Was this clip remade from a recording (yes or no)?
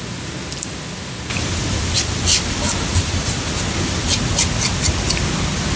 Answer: no